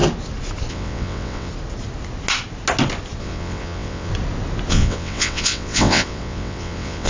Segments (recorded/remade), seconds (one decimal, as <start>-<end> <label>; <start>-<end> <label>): 0.0-0.7 recorded; 0.7-1.5 remade; 1.5-3.2 recorded; 3.2-4.1 remade; 4.1-4.7 recorded; 4.7-7.1 remade